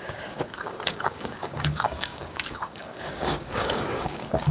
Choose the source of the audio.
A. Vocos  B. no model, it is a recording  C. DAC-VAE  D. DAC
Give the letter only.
D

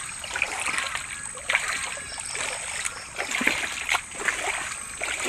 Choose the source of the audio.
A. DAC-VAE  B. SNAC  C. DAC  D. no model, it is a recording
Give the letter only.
D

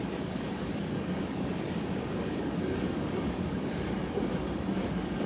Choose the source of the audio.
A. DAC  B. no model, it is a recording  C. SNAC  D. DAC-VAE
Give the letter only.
A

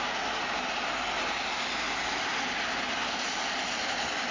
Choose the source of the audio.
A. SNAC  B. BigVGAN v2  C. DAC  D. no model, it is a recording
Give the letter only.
D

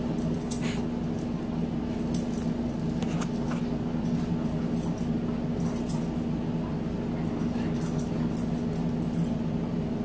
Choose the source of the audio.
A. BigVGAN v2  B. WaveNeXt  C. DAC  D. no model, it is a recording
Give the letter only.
D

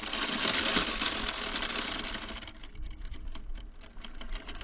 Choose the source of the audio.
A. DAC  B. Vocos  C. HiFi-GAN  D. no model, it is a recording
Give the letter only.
D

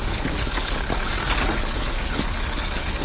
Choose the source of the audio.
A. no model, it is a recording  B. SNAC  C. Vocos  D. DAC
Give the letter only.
D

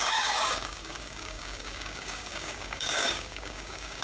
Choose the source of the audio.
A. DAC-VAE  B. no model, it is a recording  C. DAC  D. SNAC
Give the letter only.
C